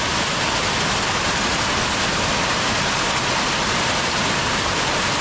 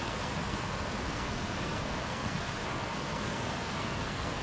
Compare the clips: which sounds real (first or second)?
first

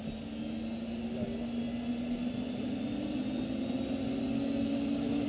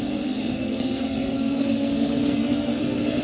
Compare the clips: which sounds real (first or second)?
first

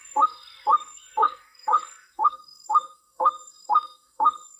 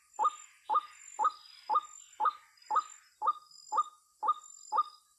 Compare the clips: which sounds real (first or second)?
second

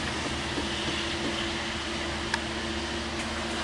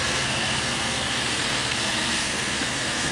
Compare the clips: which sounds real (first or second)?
first